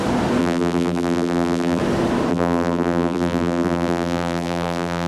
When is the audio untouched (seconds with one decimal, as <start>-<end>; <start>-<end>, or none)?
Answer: 0.0-0.4; 1.8-2.3